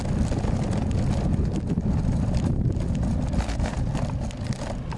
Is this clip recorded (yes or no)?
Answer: yes